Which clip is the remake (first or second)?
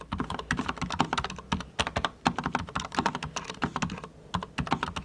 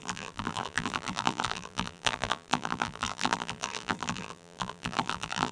second